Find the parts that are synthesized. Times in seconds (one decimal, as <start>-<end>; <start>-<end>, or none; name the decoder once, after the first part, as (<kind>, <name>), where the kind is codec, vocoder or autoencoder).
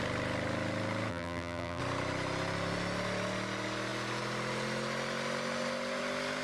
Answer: 1.1-1.8 (vocoder, BigVGAN v2)